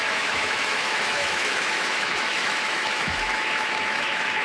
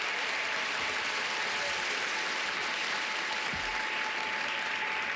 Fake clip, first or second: first